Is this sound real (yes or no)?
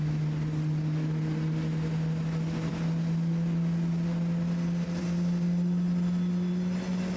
yes